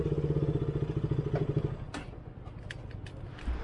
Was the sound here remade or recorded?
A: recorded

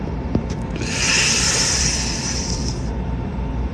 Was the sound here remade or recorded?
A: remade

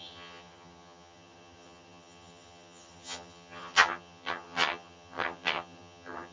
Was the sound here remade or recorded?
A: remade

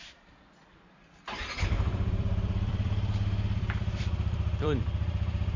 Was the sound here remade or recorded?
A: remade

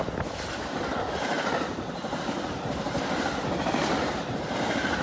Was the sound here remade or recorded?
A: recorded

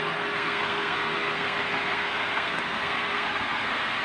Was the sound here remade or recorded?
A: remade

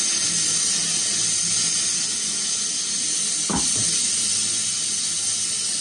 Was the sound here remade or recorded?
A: recorded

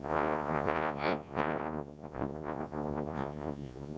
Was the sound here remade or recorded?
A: remade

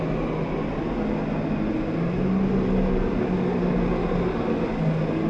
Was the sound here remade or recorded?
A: recorded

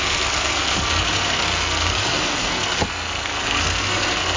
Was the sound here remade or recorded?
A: remade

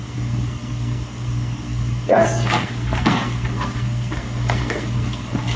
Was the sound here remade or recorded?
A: remade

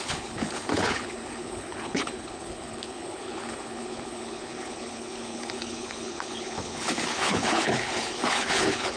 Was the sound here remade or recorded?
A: remade